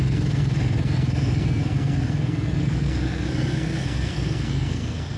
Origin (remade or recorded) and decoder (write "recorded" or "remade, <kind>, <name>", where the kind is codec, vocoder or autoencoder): remade, codec, SNAC